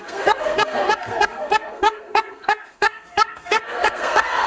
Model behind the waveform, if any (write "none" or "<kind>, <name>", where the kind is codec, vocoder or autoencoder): codec, SNAC